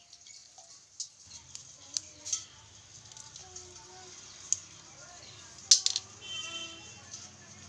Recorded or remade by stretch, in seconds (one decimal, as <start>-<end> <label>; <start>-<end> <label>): 0.0-7.7 recorded

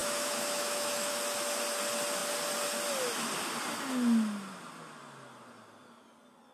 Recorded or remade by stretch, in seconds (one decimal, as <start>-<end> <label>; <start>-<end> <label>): 0.0-1.2 remade; 1.2-6.5 recorded